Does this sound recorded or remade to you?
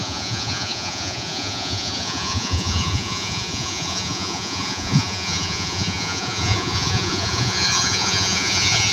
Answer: remade